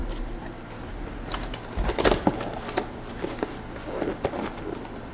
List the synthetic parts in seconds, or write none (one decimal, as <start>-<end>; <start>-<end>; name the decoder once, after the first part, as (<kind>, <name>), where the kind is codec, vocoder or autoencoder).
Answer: none